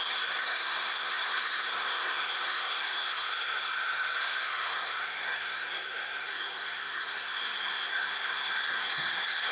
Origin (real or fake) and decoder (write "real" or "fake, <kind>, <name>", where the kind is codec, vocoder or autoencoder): fake, codec, SNAC